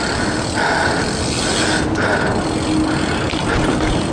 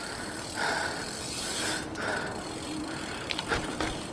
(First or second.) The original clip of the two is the first